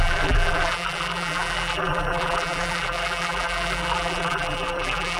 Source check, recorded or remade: remade